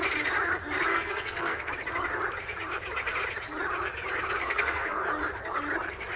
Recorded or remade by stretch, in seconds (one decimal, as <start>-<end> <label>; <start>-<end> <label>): 0.0-0.9 recorded; 0.9-1.7 remade; 1.7-4.4 recorded; 4.4-5.0 remade; 5.0-6.2 recorded